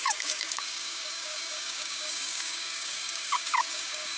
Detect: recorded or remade remade